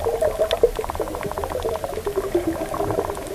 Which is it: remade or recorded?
recorded